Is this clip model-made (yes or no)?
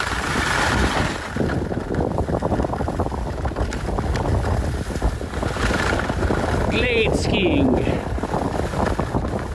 no